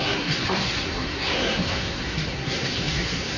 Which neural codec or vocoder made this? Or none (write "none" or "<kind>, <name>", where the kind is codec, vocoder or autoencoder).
codec, SNAC